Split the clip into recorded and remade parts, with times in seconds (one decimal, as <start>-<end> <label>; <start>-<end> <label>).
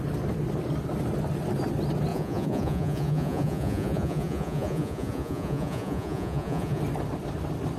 0.0-2.1 recorded; 2.1-6.8 remade; 6.8-7.8 recorded